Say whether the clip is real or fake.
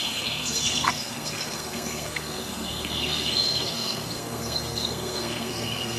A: fake